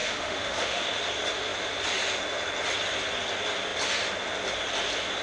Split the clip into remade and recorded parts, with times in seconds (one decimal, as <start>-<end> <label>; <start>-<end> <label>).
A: 0.0-1.0 remade; 1.0-5.2 recorded

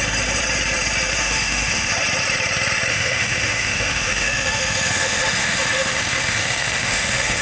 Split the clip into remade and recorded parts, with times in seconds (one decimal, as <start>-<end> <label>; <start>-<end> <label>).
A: 0.0-1.2 recorded; 1.2-1.9 remade; 1.9-2.9 recorded; 2.9-7.4 remade

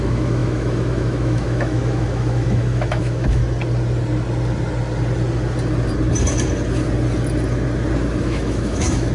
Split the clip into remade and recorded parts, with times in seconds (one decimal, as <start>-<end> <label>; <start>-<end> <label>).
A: 0.0-3.4 remade; 3.4-8.2 recorded; 8.2-9.1 remade

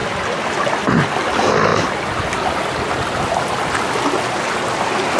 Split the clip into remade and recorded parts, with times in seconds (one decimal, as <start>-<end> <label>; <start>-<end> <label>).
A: 0.0-5.2 recorded

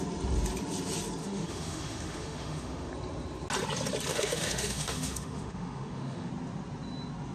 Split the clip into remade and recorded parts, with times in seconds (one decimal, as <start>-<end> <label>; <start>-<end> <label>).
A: 0.0-1.2 recorded; 1.2-2.9 remade; 2.9-4.1 recorded; 4.1-6.3 remade; 6.3-7.3 recorded